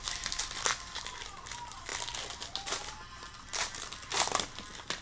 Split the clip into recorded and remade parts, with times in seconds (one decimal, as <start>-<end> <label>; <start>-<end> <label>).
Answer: 0.0-5.0 recorded